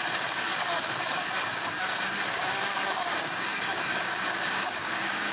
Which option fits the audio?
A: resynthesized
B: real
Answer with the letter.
A